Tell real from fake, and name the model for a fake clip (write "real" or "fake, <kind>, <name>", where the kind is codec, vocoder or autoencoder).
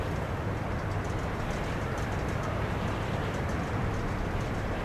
real